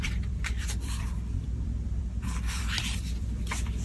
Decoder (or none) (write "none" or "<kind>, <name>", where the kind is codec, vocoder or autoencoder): vocoder, BigVGAN v2